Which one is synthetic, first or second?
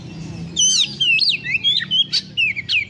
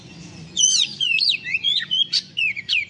second